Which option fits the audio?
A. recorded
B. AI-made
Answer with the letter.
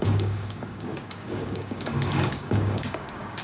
B